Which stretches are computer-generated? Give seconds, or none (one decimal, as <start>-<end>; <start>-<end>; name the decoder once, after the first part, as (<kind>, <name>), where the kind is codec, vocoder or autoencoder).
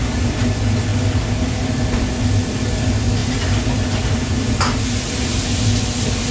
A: none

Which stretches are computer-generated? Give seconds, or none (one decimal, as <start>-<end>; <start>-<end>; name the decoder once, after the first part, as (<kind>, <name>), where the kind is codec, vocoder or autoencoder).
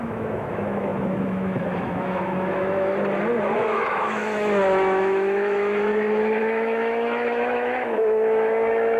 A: 0.0-2.9 (autoencoder, DAC-VAE); 3.4-5.9; 6.4-9.0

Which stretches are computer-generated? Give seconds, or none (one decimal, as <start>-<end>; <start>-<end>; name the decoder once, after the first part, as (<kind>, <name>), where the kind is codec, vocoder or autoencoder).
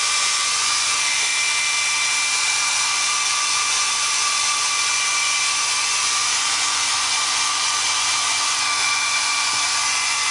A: 0.0-1.3 (vocoder, Vocos); 2.3-10.3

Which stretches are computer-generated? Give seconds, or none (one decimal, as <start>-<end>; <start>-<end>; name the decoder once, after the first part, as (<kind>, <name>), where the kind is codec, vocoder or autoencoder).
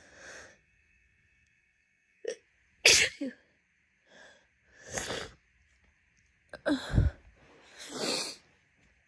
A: 0.5-2.4 (codec, SNAC)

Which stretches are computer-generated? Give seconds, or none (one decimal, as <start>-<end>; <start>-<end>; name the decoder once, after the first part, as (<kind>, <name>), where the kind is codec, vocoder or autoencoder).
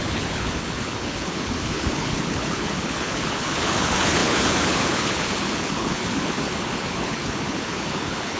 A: 0.0-8.4 (codec, HILCodec)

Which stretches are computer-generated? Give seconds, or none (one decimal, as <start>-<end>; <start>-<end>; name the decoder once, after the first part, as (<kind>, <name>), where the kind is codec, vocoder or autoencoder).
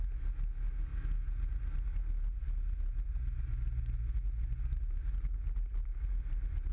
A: none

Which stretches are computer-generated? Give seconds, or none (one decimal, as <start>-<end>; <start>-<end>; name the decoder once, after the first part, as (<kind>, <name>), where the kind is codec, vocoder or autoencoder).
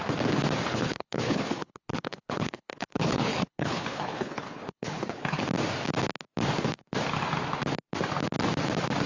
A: 0.7-5.4 (codec, HILCodec)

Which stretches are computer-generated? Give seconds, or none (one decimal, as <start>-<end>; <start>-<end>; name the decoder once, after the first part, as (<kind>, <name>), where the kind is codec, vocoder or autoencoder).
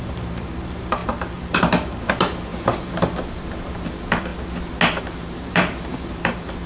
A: 0.0-4.3 (vocoder, BigVGAN v2); 5.0-6.7